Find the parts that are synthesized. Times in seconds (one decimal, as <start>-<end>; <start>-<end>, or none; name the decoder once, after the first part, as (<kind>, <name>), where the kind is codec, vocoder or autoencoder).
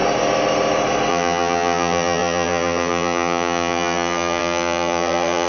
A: 1.1-5.5 (vocoder, BigVGAN v2)